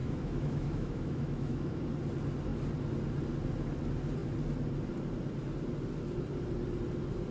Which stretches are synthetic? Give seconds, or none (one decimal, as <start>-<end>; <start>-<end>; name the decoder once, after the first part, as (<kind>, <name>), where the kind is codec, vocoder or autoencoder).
0.0-1.8 (autoencoder, DAC-VAE)